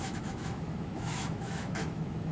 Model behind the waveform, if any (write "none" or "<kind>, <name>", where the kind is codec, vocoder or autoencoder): autoencoder, DAC-VAE